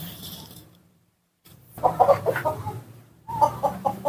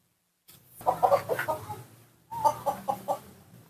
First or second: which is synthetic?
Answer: first